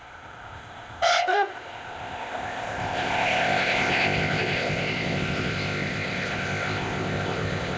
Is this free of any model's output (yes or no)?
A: no